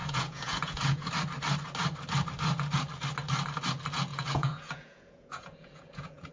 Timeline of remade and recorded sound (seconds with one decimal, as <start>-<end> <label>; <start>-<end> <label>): 0.0-1.1 remade; 1.1-4.1 recorded; 4.1-6.3 remade